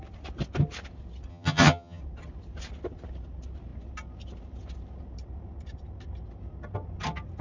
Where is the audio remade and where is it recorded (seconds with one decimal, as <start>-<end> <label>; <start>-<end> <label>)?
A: 0.0-1.3 recorded; 1.3-2.0 remade; 2.0-7.4 recorded